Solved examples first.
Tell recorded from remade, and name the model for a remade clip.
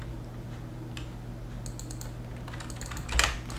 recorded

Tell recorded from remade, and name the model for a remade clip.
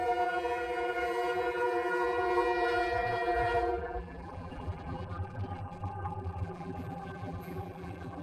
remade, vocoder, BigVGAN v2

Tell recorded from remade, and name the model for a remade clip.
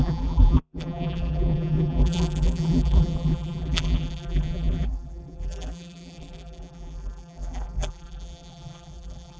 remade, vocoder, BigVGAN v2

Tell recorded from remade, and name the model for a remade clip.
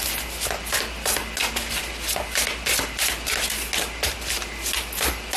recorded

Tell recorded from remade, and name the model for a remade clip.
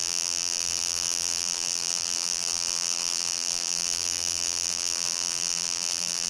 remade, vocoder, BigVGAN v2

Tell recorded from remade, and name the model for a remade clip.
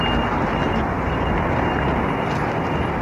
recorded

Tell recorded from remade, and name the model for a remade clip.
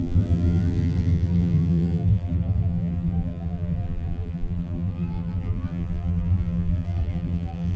remade, vocoder, BigVGAN v2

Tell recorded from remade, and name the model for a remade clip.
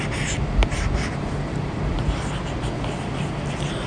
recorded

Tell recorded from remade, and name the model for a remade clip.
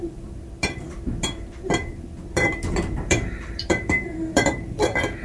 remade, vocoder, BigVGAN v2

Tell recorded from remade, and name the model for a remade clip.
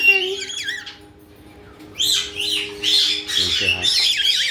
recorded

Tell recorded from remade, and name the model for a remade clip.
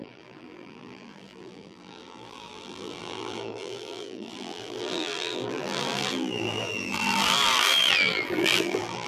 remade, vocoder, BigVGAN v2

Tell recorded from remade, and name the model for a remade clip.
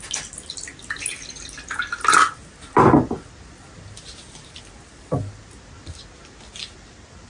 recorded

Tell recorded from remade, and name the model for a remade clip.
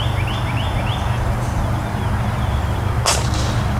recorded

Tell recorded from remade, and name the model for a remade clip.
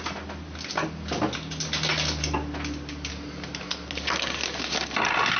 recorded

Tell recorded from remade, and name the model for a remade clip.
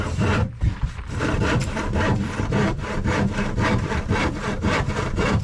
remade, vocoder, BigVGAN v2